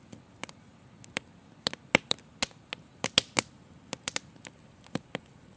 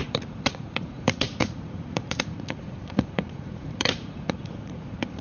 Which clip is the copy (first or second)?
second